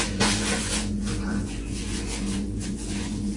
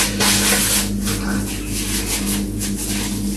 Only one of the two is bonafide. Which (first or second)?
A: second